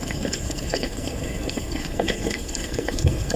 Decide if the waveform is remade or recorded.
remade